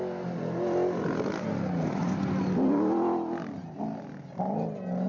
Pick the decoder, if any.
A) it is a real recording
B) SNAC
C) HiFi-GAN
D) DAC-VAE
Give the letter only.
A